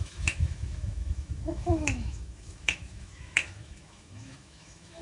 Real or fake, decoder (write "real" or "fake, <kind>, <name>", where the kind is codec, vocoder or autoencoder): fake, autoencoder, DAC-VAE